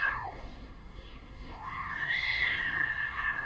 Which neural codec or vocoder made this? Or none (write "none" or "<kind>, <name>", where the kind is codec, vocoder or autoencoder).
codec, SNAC